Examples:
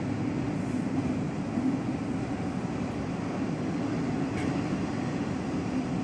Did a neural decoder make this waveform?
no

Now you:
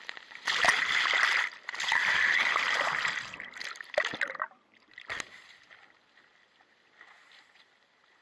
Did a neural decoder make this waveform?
no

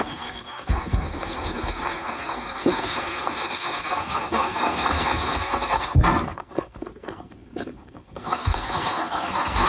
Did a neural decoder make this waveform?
yes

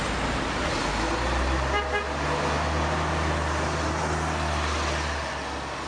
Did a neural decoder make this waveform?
no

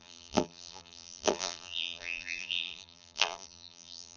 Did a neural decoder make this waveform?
yes